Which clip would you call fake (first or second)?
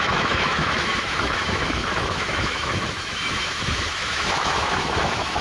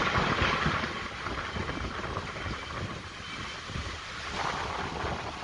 first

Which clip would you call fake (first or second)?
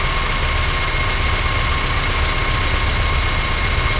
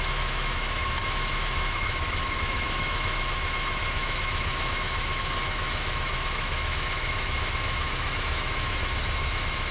second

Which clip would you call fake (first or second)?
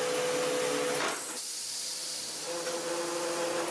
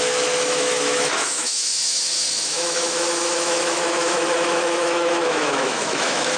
second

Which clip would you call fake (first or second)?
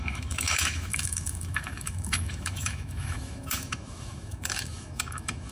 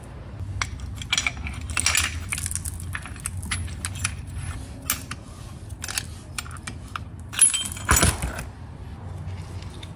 first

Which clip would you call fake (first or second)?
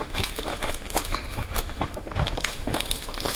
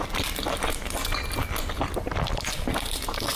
first